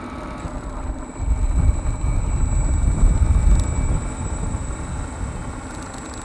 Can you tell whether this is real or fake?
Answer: real